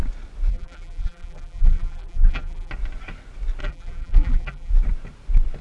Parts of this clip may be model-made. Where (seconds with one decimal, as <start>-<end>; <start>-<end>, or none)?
0.5-2.7; 3.6-4.7